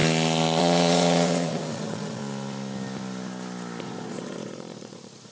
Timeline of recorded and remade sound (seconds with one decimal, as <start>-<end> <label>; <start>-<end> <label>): 0.0-0.6 recorded; 0.6-2.2 remade; 2.2-3.8 recorded; 3.8-5.3 remade